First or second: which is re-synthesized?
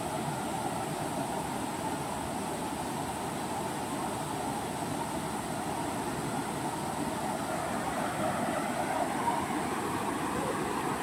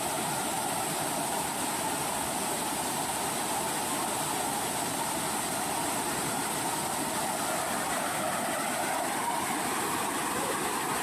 second